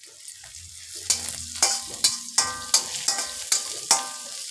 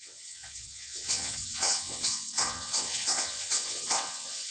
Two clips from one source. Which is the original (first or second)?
first